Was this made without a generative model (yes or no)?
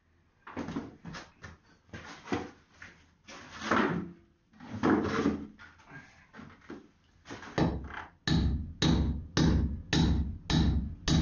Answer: yes